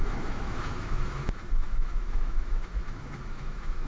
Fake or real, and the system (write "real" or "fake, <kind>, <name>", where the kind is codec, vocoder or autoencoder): fake, autoencoder, DAC-VAE